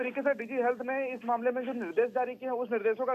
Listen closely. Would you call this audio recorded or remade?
recorded